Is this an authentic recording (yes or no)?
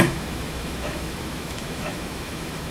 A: no